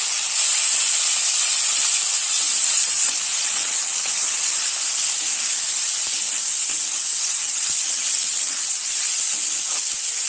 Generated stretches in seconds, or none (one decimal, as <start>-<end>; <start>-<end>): 2.2-4.4; 6.9-8.8